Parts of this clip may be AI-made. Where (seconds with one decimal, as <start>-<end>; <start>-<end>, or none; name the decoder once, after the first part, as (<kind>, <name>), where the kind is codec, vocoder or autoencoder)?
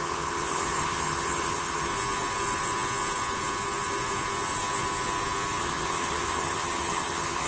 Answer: 0.0-1.9 (vocoder, HiFi-GAN); 5.6-7.5